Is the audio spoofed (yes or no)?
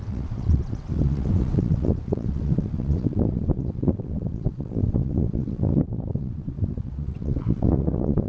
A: yes